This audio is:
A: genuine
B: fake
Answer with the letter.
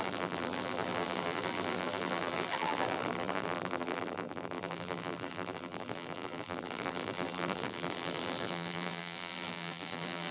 B